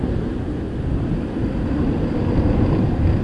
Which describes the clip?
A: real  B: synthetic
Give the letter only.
A